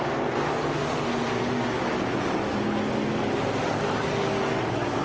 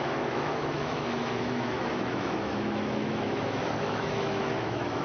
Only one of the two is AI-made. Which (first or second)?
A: second